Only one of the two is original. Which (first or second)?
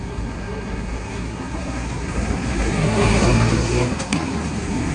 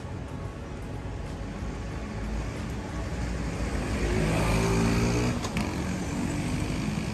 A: second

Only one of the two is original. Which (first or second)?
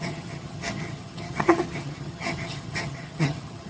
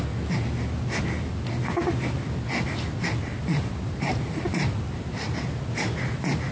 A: second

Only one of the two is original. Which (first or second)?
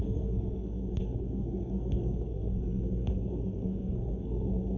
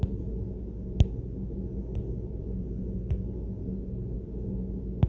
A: second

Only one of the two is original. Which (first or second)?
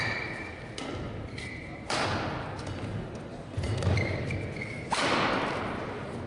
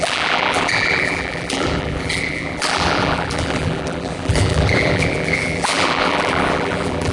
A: first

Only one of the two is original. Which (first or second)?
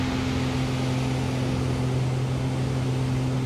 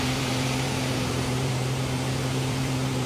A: first